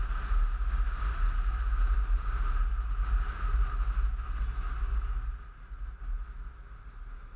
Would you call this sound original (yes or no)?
yes